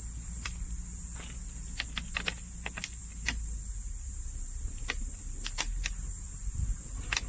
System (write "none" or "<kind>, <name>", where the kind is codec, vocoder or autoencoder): none